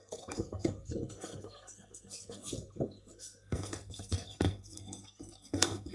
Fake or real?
fake